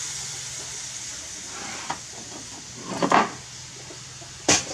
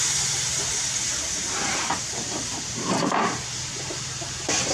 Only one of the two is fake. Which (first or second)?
second